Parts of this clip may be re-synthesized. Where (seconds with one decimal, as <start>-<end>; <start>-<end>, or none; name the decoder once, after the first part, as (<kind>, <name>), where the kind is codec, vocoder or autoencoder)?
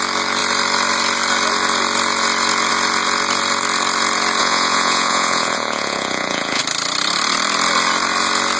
4.4-6.6 (vocoder, Vocos)